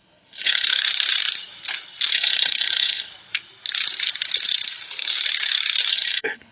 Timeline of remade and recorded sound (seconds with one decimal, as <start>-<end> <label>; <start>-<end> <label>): 0.0-0.7 remade; 0.7-2.1 recorded; 2.1-3.1 remade; 3.1-5.9 recorded; 5.9-6.5 remade